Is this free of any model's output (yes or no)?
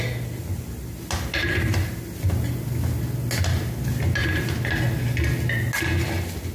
yes